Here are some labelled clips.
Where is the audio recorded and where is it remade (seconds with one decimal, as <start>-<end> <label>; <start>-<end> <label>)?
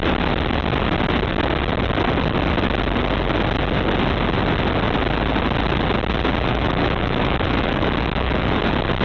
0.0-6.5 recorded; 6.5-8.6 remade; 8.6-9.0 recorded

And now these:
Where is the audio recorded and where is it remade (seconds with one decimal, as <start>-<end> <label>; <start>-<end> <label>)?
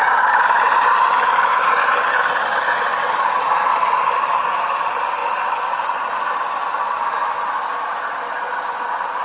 0.0-1.5 remade; 1.5-4.0 recorded; 4.0-5.2 remade; 5.2-6.7 recorded; 6.7-9.2 remade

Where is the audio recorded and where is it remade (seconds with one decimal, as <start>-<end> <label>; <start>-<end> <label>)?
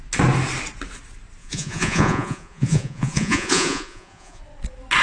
0.0-1.4 recorded; 1.4-4.4 remade; 4.4-5.0 recorded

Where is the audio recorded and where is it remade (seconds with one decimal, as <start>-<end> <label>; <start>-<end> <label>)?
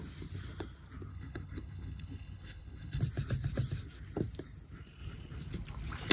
0.0-1.1 recorded; 1.1-3.0 remade; 3.0-6.1 recorded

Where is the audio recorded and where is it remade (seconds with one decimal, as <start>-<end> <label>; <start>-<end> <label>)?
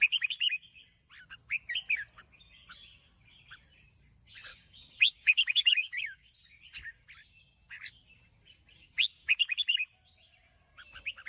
0.0-4.5 recorded; 4.5-6.3 remade; 6.3-11.3 recorded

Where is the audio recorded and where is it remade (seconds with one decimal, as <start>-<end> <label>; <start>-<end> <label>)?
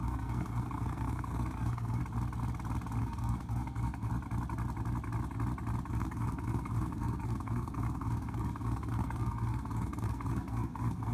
0.0-2.0 remade; 2.0-3.0 recorded; 3.0-4.1 remade; 4.1-5.9 recorded; 5.9-11.1 remade